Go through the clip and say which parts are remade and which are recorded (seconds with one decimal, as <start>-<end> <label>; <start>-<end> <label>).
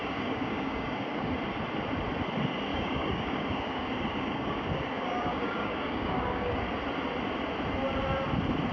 0.0-1.3 remade; 1.3-2.7 recorded; 2.7-6.6 remade; 6.6-8.7 recorded